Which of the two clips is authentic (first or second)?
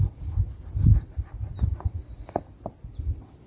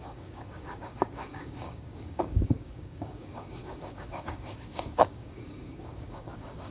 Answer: first